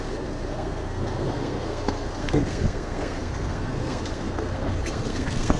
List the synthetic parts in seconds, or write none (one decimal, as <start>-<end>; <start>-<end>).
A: 0.0-5.6